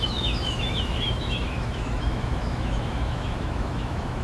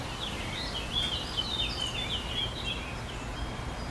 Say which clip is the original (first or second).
second